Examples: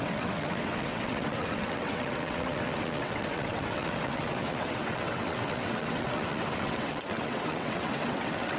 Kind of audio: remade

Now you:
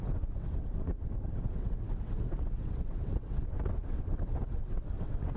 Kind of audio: remade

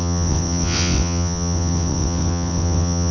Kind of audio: remade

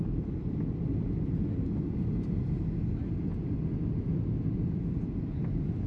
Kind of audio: recorded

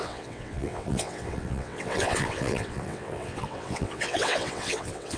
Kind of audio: remade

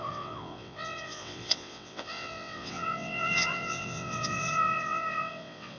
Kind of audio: remade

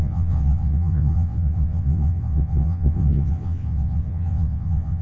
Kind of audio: remade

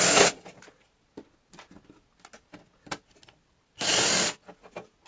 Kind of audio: recorded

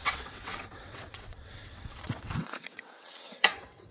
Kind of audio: remade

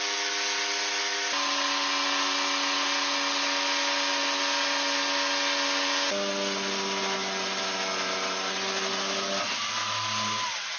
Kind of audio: recorded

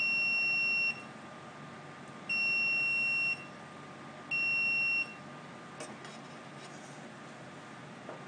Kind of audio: recorded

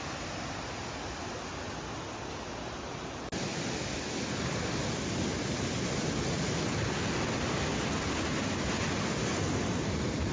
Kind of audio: recorded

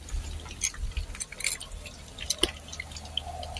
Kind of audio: recorded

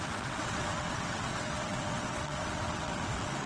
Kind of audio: remade